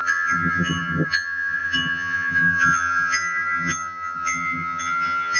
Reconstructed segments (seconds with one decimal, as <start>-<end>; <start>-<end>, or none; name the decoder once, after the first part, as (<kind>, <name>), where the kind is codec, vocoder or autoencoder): 0.0-5.4 (vocoder, HiFi-GAN)